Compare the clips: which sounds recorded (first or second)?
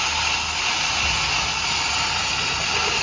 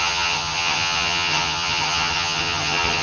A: first